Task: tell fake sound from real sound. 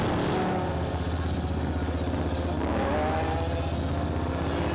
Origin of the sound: real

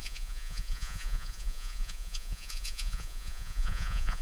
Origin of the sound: fake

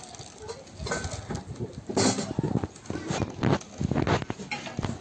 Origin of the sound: real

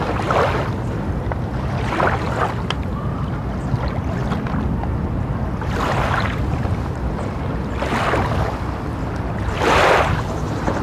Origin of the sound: real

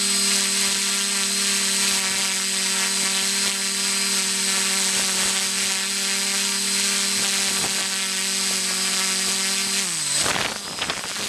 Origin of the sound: real